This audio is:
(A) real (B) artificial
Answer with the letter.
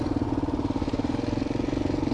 A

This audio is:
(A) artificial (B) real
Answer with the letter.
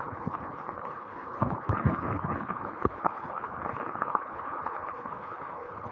A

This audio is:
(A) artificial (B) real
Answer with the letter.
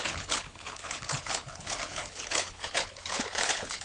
A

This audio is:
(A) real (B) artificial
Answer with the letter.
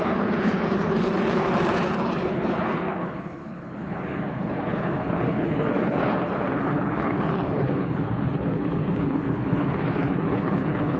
B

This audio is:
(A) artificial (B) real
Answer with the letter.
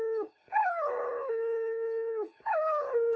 A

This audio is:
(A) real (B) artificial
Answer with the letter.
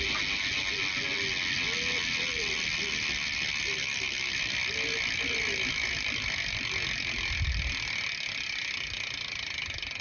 A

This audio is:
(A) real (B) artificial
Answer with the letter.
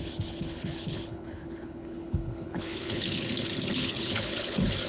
B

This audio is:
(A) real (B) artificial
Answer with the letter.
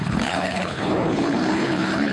B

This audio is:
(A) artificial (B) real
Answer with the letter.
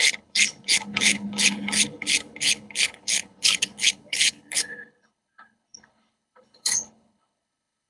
A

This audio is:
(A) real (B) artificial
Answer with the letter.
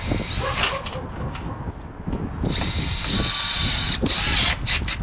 A